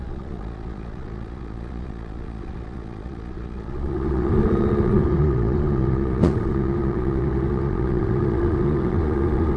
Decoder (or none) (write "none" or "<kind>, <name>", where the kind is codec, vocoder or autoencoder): vocoder, Vocos